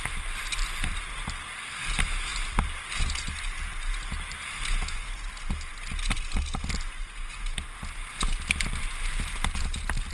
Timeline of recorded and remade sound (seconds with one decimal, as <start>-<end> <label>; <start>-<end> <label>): 0.0-2.3 recorded; 2.3-2.9 remade; 2.9-10.1 recorded